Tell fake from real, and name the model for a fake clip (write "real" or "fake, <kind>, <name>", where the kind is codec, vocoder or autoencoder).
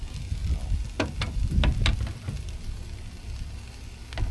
real